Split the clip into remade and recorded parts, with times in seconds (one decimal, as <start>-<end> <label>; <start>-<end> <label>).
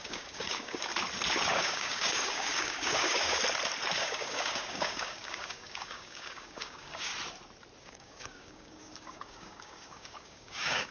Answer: 0.0-0.9 remade; 0.9-1.5 recorded; 1.5-3.4 remade; 3.4-4.0 recorded; 4.0-7.1 remade; 7.1-7.8 recorded; 7.8-10.9 remade